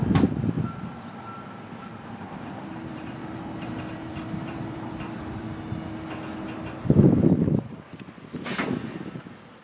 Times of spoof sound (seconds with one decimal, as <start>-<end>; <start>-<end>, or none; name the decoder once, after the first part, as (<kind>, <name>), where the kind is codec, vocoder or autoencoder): 1.9-5.4 (vocoder, BigVGAN v2)